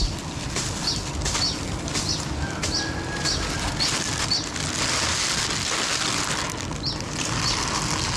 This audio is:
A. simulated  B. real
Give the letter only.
B